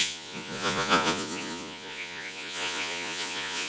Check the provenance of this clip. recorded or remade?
remade